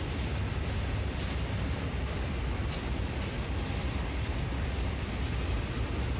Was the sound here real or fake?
real